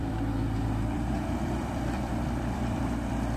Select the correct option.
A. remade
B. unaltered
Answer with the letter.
A